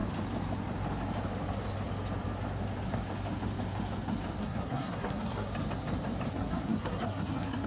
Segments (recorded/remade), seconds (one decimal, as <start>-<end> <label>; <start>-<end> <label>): 0.0-4.4 recorded; 4.4-5.5 remade; 5.5-6.3 recorded; 6.3-7.7 remade